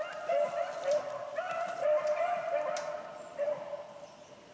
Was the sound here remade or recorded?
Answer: recorded